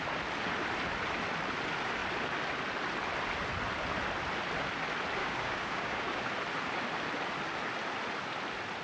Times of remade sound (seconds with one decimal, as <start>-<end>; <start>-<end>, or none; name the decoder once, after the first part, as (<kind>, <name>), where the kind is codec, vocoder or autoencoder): 5.2-6.3 (codec, DAC)